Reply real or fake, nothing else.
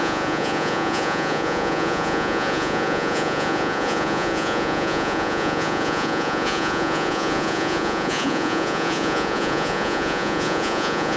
fake